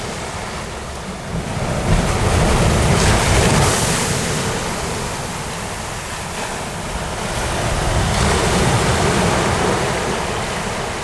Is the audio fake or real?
real